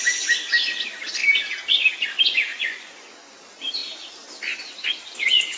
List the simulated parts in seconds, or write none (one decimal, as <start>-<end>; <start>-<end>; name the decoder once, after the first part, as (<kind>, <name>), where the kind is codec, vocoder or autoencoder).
2.5-3.4 (vocoder, Vocos)